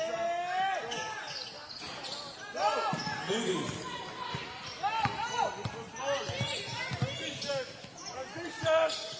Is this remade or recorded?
recorded